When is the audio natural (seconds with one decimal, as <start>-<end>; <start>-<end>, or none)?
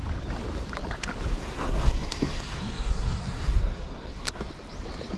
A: 0.0-1.4; 4.5-5.2